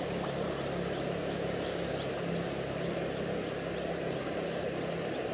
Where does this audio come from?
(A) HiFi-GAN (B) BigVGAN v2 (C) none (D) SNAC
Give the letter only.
C